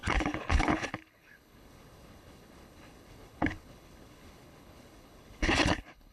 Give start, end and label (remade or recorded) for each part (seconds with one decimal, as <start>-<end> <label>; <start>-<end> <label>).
0.0-6.1 remade